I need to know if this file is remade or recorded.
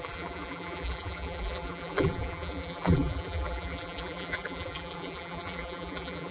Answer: remade